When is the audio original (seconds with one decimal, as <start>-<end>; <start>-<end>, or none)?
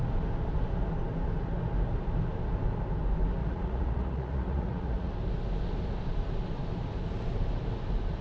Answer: 0.0-3.4; 5.1-8.2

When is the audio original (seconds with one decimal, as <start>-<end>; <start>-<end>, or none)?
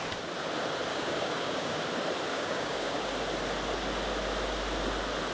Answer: 0.0-0.9; 1.8-2.3; 3.1-5.3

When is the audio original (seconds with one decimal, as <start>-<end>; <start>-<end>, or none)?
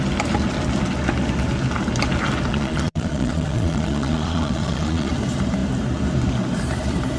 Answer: 0.0-2.5; 5.1-7.2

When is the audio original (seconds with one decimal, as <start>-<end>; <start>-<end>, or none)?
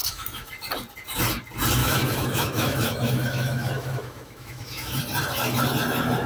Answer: 0.5-1.8; 5.0-6.3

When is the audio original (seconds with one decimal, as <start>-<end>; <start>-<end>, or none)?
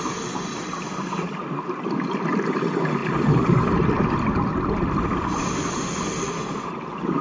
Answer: 0.0-7.2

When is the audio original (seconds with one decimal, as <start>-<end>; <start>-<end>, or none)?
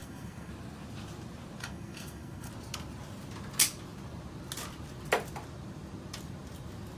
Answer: 0.5-1.6; 2.5-7.0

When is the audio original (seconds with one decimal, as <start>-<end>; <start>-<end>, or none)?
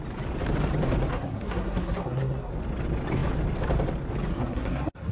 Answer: 0.0-1.1; 2.5-4.3